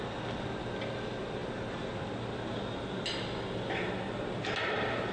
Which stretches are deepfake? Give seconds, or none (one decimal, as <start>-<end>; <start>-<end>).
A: none